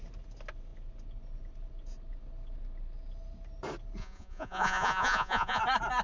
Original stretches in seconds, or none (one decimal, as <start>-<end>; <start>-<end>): 0.0-4.0; 5.6-6.0